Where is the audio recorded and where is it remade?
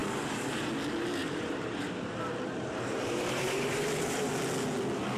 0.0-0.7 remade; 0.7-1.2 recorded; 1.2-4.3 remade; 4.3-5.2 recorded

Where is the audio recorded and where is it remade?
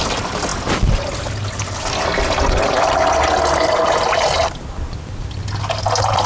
0.0-6.3 recorded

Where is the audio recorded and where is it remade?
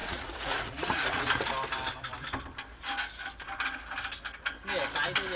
0.0-1.3 remade; 1.3-5.4 recorded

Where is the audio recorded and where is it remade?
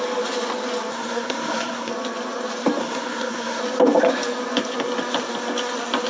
0.0-0.9 recorded; 0.9-1.9 remade; 1.9-2.8 recorded; 2.8-3.6 remade; 3.6-6.1 recorded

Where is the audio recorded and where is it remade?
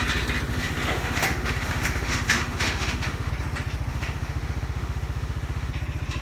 0.0-0.5 recorded; 0.5-3.3 remade; 3.3-3.9 recorded; 3.9-5.7 remade; 5.7-6.2 recorded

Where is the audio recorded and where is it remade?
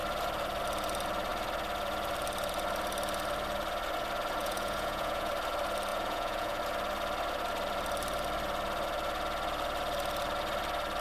0.0-4.4 recorded; 4.4-5.3 remade; 5.3-5.9 recorded; 5.9-6.6 remade; 6.6-11.0 recorded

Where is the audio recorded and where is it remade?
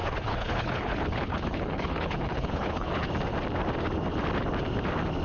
0.0-3.1 remade; 3.1-5.2 recorded